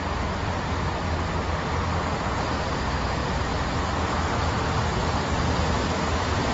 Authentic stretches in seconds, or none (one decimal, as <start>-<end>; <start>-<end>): 0.0-6.5

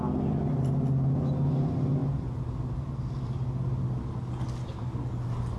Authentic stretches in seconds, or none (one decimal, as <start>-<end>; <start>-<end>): 0.0-5.6

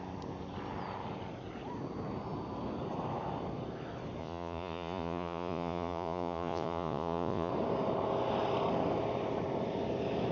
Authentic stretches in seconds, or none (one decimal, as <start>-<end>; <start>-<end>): 0.0-4.2; 7.5-10.3